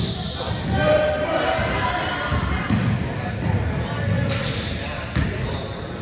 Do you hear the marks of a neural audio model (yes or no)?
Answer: no